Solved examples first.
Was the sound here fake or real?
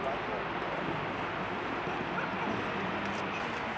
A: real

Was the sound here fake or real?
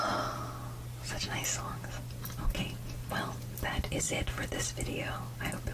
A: real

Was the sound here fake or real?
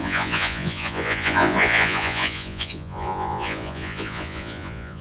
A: fake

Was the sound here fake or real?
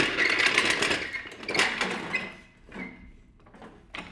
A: real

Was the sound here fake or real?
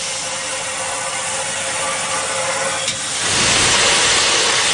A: real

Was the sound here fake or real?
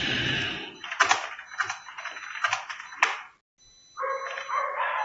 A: real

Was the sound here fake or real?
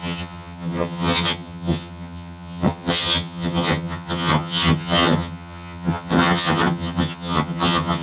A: fake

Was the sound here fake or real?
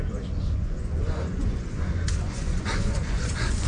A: fake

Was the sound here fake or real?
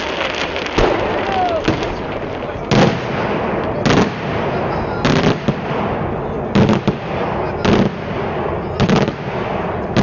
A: real